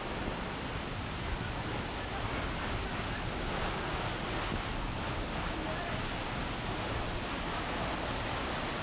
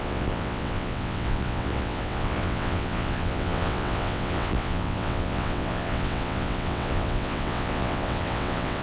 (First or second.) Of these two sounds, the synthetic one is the second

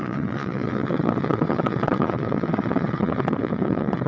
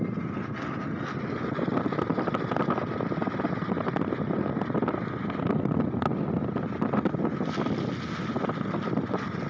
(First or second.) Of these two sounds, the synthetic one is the first